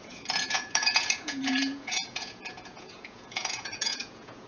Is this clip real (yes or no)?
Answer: no